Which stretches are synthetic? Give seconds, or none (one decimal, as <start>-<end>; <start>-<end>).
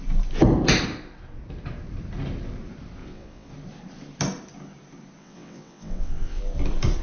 3.0-3.5; 5.2-6.4